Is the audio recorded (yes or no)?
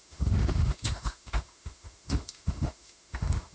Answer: no